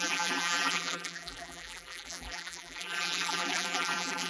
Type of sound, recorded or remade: remade